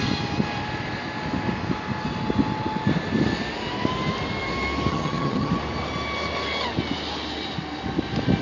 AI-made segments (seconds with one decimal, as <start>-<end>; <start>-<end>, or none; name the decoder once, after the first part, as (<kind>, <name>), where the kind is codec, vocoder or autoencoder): 4.9-5.5 (vocoder, HiFi-GAN)